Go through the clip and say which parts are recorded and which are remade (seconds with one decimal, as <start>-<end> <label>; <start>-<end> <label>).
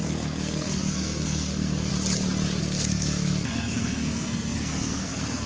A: 0.0-1.9 remade; 1.9-2.6 recorded; 2.6-5.5 remade